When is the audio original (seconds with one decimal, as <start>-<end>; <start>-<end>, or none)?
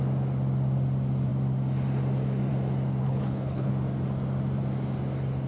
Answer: 0.0-3.0; 3.7-5.5